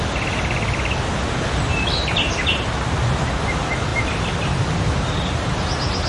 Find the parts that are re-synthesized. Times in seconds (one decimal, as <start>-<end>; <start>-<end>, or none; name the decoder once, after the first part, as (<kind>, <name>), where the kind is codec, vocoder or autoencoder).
none